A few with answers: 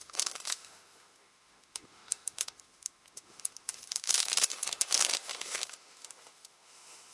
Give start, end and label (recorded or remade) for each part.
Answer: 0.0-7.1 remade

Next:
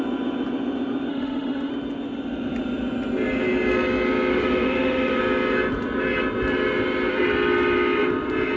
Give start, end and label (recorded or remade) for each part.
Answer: 0.0-1.1 recorded; 1.1-1.7 remade; 1.7-4.3 recorded; 4.3-5.2 remade; 5.2-8.6 recorded

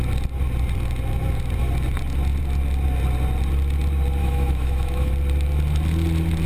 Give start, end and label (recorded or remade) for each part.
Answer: 0.0-4.2 recorded; 4.2-5.1 remade; 5.1-6.5 recorded

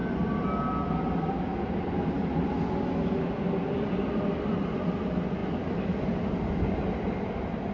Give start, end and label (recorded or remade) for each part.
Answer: 0.0-7.7 recorded

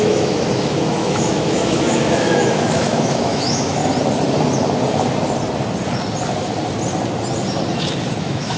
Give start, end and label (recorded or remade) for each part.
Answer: 0.0-3.8 remade; 3.8-8.2 recorded; 8.2-8.6 remade